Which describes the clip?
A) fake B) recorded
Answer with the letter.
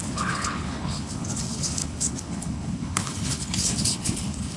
A